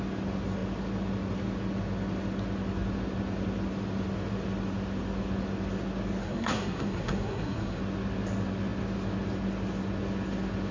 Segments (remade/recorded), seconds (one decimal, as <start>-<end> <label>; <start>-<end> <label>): 0.0-6.2 recorded; 6.2-7.8 remade; 7.8-10.7 recorded